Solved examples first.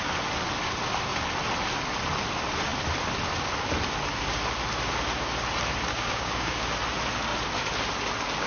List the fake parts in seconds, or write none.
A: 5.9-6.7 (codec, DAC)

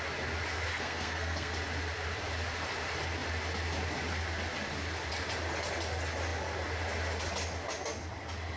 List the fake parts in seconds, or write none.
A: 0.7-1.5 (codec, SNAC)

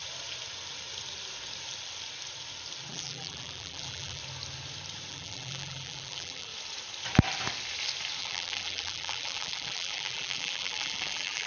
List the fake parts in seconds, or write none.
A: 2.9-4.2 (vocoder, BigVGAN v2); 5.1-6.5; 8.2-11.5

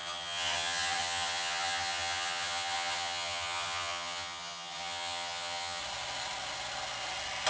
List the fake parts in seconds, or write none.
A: 0.0-5.8 (vocoder, HiFi-GAN)

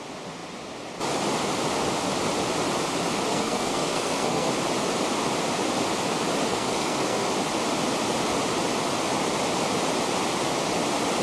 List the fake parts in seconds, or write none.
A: 3.3-4.5 (codec, SNAC); 6.5-7.3

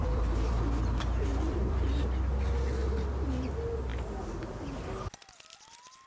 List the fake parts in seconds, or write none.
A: 0.0-0.5 (vocoder, BigVGAN v2); 1.3-2.0